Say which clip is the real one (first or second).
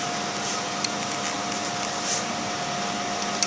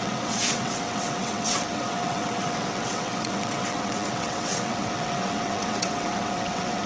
first